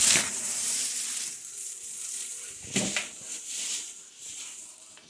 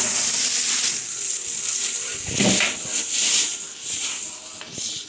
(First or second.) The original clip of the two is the second